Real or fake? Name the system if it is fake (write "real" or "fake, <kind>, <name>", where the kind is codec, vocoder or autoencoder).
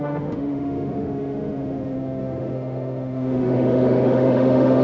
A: fake, autoencoder, DAC-VAE